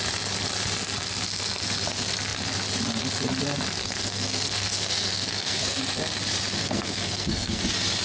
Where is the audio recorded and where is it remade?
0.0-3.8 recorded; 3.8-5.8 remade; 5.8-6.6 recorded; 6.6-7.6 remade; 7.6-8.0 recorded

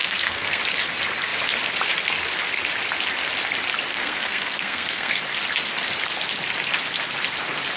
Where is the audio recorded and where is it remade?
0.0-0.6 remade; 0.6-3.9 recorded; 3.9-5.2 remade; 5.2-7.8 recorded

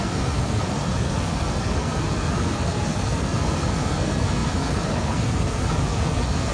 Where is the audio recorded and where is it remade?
0.0-6.5 remade